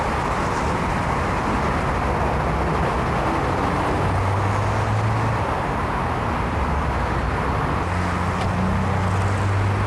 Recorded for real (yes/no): yes